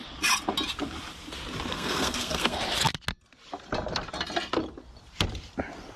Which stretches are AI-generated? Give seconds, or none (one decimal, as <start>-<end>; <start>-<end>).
1.7-2.6